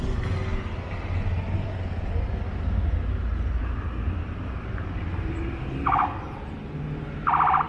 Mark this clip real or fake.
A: real